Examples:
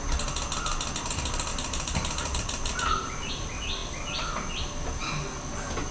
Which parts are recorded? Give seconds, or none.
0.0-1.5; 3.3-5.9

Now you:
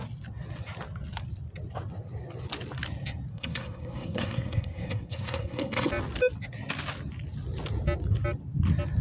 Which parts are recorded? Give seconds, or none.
0.0-3.3; 5.9-9.0

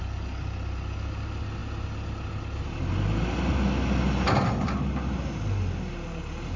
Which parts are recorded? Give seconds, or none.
0.0-6.6

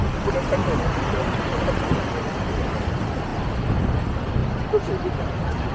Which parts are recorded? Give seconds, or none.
0.0-5.7

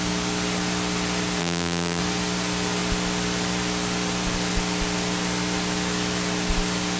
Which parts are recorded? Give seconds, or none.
0.0-1.4; 2.0-7.0

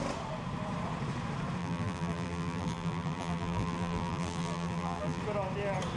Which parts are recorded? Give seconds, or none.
0.0-1.6; 5.2-6.0

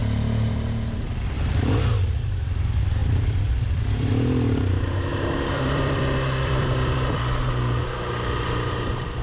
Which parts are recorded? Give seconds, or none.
0.0-3.0; 4.1-5.1; 7.2-9.2